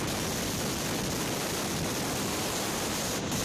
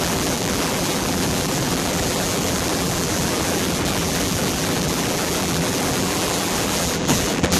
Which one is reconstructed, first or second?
second